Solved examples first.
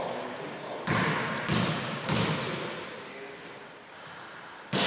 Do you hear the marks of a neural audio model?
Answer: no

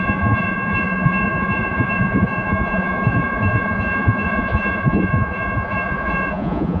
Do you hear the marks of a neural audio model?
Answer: yes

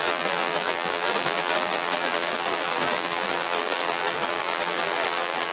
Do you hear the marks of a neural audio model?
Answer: yes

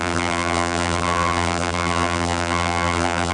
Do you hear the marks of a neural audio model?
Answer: yes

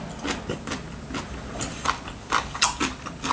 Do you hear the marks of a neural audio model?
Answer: no